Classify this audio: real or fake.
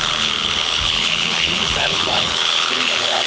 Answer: fake